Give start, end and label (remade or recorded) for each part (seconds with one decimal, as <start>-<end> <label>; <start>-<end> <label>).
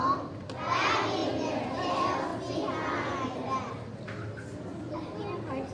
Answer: 0.0-5.7 recorded